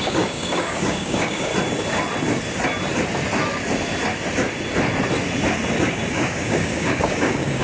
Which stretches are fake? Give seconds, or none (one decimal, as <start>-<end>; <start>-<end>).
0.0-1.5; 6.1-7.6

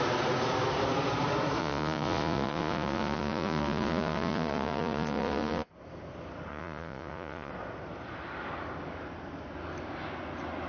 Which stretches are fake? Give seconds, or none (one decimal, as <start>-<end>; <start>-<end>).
1.6-5.7; 6.5-7.5

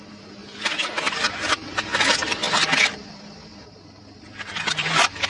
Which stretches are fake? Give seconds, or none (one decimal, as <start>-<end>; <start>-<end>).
0.0-2.4; 2.9-5.3

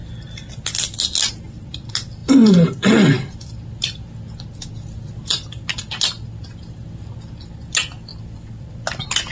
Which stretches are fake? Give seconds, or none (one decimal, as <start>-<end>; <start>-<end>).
2.2-7.1; 8.1-9.3